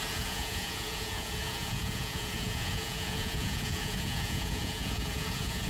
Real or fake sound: fake